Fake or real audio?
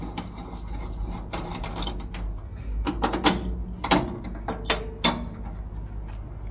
real